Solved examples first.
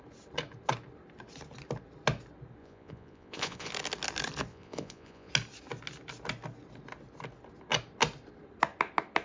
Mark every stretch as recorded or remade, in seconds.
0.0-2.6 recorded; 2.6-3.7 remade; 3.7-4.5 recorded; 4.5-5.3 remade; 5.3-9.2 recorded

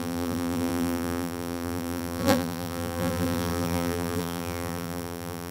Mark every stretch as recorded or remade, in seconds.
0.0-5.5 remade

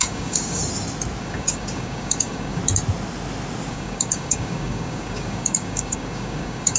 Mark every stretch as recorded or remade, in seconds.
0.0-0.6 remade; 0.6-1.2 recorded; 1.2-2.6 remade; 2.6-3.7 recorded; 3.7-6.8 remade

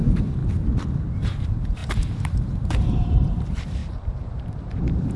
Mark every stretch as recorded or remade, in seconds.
0.0-0.4 remade; 0.4-1.1 recorded; 1.1-5.2 remade

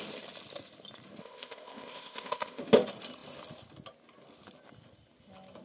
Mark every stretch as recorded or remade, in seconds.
0.0-1.2 recorded; 1.2-2.6 remade; 2.6-5.6 recorded

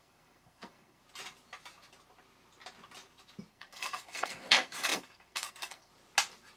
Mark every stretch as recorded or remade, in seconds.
0.0-1.0 remade; 1.0-3.5 recorded; 3.5-5.9 remade; 5.9-6.6 recorded

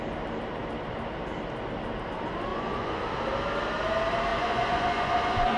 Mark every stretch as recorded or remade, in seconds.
0.0-2.5 recorded; 2.5-3.0 remade; 3.0-4.3 recorded; 4.3-5.6 remade

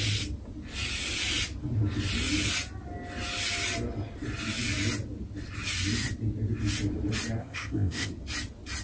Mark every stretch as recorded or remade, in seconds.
0.0-7.4 recorded; 7.4-8.1 remade; 8.1-8.8 recorded